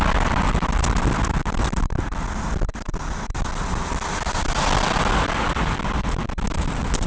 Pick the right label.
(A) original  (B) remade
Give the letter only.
A